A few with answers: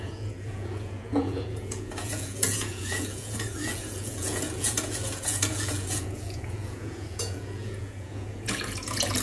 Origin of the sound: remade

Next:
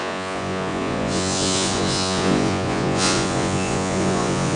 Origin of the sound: remade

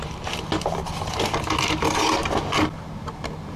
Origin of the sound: recorded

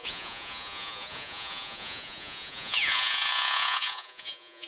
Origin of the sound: remade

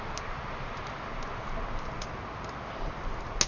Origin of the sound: recorded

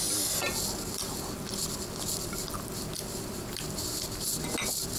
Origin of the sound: recorded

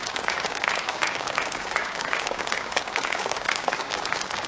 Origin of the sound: remade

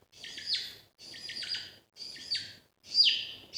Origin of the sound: recorded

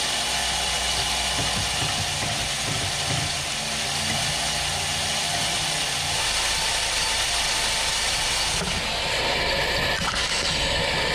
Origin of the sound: recorded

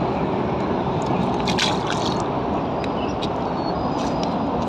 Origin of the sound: recorded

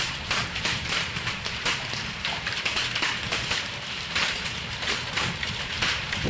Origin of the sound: remade